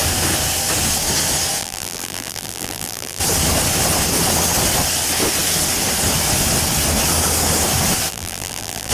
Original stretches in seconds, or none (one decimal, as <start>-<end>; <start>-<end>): 0.0-1.6; 3.2-8.1